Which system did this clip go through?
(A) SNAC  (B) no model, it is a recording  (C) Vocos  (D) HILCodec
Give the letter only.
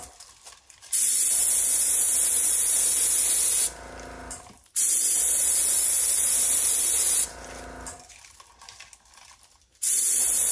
B